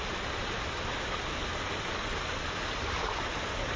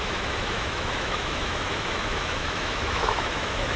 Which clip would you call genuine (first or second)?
first